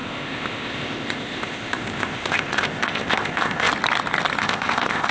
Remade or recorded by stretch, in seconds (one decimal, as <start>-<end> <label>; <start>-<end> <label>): 0.0-3.7 remade; 3.7-4.4 recorded; 4.4-5.1 remade